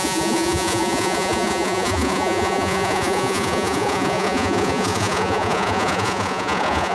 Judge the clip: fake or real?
fake